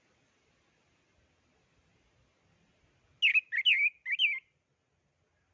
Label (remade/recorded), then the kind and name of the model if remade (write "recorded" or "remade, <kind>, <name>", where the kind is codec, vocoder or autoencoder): recorded